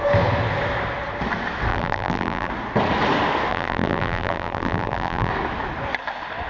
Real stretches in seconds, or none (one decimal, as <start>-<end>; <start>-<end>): 0.0-1.7; 2.5-3.5; 5.3-6.5